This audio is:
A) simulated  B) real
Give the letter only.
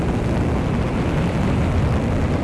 B